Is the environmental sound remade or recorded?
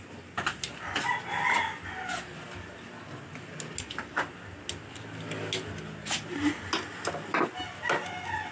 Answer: recorded